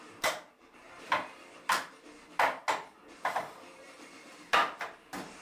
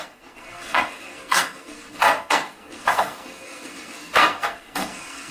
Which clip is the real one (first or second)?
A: first